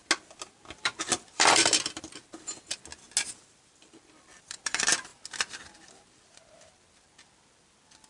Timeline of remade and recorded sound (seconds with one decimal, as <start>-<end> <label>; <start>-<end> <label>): 0.0-0.8 recorded; 0.8-2.2 remade; 2.2-3.4 recorded; 3.4-5.1 remade; 5.1-5.8 recorded; 5.8-8.1 remade